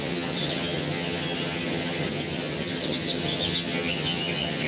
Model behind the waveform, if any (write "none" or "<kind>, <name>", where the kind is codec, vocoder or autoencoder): vocoder, HiFi-GAN